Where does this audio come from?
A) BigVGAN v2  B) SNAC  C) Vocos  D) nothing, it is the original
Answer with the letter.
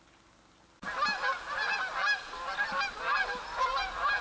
D